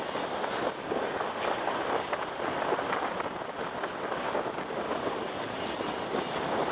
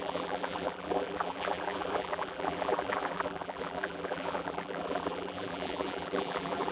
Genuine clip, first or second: first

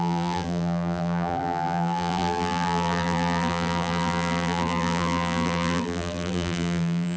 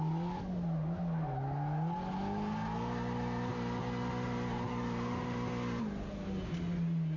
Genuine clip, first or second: second